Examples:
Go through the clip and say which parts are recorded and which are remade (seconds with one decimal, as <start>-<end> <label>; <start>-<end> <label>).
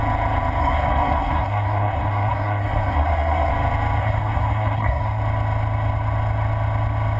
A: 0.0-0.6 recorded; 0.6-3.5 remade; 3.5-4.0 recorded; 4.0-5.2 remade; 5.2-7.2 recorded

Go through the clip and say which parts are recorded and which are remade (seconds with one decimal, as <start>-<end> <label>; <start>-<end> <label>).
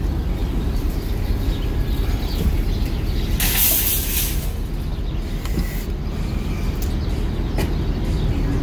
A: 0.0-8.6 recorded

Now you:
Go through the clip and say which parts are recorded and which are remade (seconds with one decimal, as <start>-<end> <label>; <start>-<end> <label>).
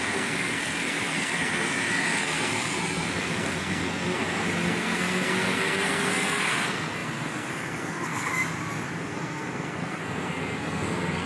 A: 0.0-8.3 remade; 8.3-9.0 recorded; 9.0-11.3 remade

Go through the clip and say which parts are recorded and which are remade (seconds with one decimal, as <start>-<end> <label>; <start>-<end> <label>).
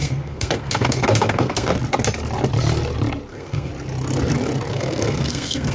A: 0.0-1.7 remade; 1.7-3.3 recorded; 3.3-3.7 remade; 3.7-4.7 recorded; 4.7-5.7 remade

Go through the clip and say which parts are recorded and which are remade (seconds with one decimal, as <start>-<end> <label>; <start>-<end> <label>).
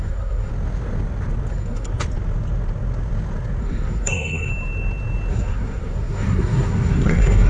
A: 0.0-0.5 remade; 0.5-1.5 recorded; 1.5-1.9 remade; 1.9-3.6 recorded; 3.6-4.5 remade; 4.5-5.3 recorded; 5.3-7.5 remade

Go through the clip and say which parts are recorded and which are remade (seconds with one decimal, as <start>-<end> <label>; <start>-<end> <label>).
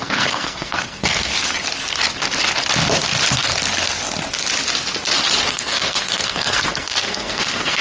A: 0.0-1.3 remade; 1.3-5.5 recorded; 5.5-7.8 remade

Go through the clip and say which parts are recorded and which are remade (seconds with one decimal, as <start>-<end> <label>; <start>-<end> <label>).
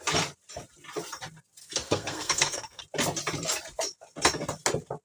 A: 0.0-1.6 recorded; 1.6-2.8 remade; 2.8-5.0 recorded